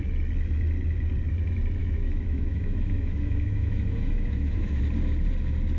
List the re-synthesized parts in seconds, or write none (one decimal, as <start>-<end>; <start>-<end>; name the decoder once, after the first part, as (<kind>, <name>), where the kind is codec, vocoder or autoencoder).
1.8-4.8 (autoencoder, DAC-VAE)